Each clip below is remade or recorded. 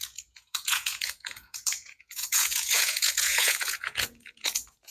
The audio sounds remade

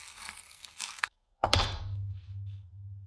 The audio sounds remade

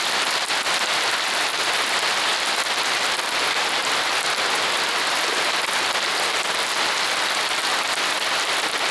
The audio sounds recorded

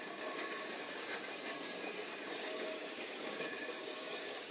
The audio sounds remade